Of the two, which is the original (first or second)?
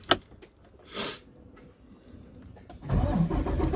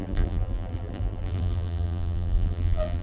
first